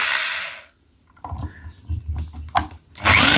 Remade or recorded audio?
recorded